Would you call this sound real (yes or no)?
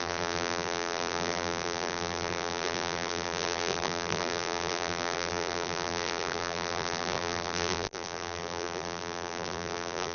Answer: no